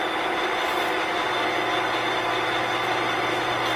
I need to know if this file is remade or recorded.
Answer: recorded